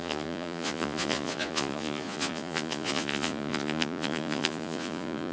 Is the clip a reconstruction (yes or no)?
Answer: yes